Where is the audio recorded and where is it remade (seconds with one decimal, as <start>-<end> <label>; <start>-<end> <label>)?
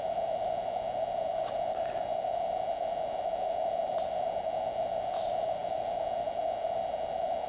0.0-7.5 recorded